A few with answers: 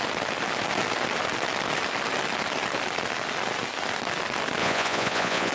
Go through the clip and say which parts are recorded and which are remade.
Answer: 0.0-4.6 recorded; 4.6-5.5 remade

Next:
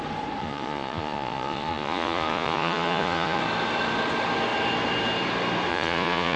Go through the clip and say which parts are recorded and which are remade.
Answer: 0.0-0.4 recorded; 0.4-3.4 remade; 3.4-5.7 recorded; 5.7-6.4 remade

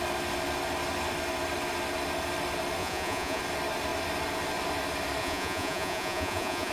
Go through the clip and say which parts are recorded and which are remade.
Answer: 0.0-2.8 recorded; 2.8-3.4 remade; 3.4-5.2 recorded; 5.2-6.7 remade

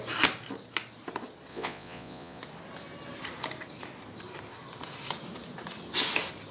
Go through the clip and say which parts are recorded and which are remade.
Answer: 0.0-1.5 recorded; 1.5-2.4 remade; 2.4-6.5 recorded

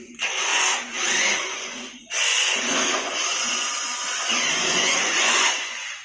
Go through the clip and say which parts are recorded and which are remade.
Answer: 0.0-6.0 remade

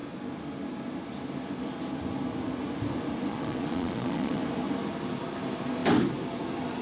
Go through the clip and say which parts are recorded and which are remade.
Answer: 0.0-3.3 recorded; 3.3-4.4 remade; 4.4-6.8 recorded